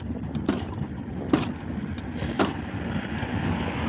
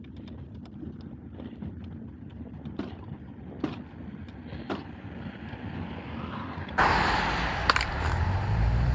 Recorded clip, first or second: first